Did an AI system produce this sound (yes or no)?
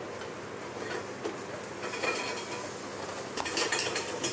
no